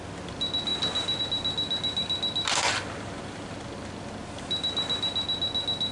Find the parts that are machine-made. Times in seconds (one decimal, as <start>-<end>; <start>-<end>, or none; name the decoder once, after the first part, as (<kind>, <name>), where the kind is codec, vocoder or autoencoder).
none